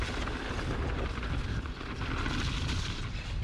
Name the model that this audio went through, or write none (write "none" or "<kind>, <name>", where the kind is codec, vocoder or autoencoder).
none